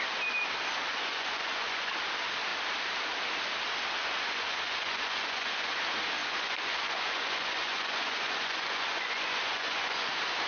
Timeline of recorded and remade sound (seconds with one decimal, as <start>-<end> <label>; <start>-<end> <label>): 0.0-0.9 recorded; 0.9-1.9 remade; 1.9-4.0 recorded; 4.0-5.7 remade; 5.7-6.2 recorded; 6.2-10.1 remade; 10.1-10.5 recorded

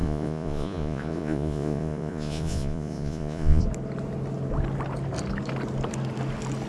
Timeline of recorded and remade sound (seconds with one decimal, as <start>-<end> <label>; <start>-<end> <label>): 0.0-3.6 remade; 3.6-6.7 recorded